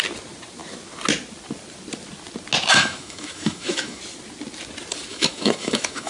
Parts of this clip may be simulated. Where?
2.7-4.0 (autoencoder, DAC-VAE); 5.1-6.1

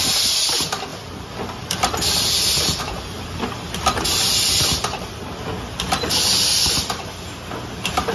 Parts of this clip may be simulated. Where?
0.9-2.8 (vocoder, BigVGAN v2)

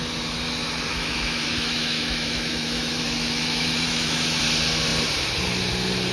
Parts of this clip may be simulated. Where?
0.9-4.4 (autoencoder, DAC-VAE)

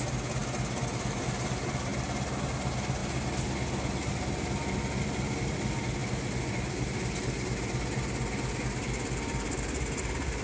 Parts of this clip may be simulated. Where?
none

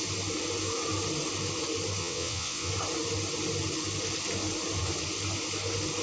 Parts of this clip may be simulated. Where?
2.0-2.7 (vocoder, WaveNeXt)